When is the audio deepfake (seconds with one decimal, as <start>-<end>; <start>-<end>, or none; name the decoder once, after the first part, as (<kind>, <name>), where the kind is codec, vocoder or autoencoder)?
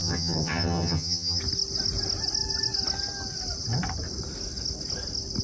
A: 0.0-1.4 (vocoder, HiFi-GAN)